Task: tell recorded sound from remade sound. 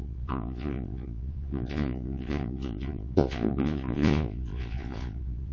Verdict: remade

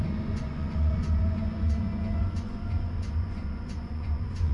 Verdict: remade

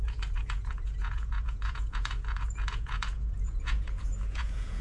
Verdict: remade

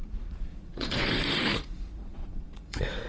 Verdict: remade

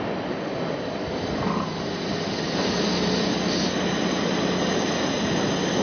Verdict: recorded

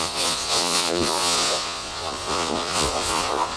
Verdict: remade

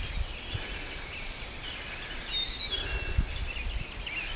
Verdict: recorded